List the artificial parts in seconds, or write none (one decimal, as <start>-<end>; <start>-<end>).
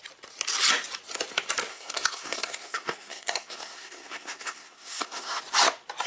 1.7-5.4